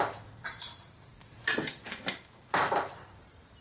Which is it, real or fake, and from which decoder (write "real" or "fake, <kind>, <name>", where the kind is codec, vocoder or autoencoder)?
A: fake, vocoder, BigVGAN v2